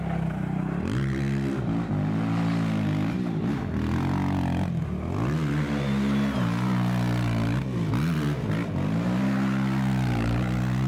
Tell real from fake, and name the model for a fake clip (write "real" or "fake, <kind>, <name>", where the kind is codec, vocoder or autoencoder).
real